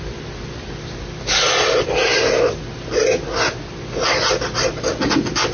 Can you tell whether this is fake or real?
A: real